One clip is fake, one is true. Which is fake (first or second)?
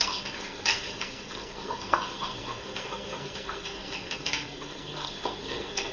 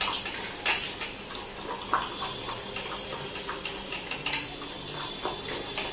first